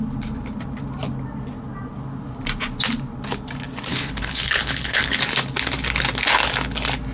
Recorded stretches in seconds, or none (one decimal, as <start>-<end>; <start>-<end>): 0.0-3.9; 5.2-7.1